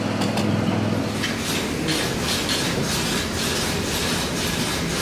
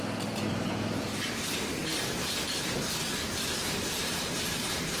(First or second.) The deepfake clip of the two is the second